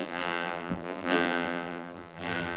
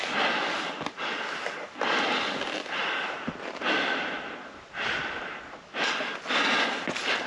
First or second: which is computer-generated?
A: first